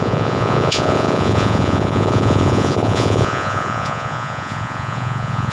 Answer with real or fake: fake